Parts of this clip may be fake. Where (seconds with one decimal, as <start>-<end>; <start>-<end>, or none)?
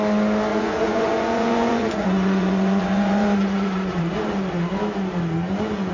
0.5-4.0